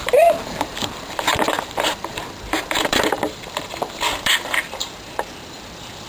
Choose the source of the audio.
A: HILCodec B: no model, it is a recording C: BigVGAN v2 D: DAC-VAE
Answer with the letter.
C